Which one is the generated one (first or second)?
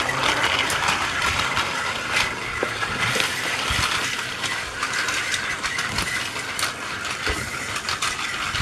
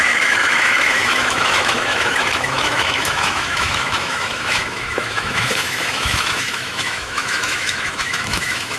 second